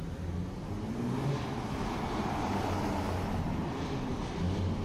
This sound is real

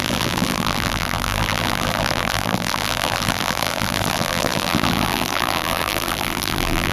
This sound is fake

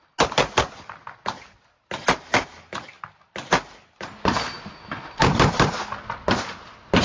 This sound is real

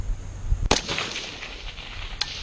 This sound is real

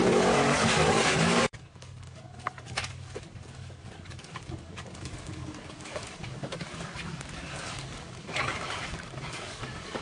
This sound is fake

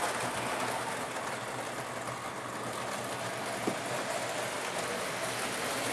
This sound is real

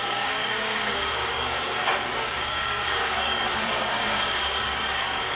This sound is fake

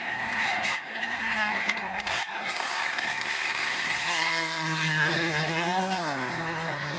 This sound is fake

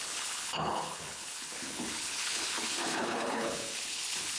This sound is fake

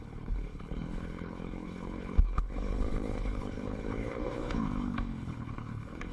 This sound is fake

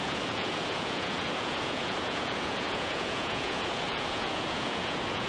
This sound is fake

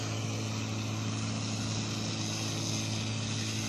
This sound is real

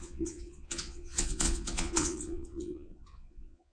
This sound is fake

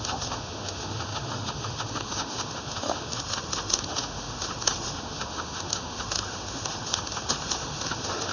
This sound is fake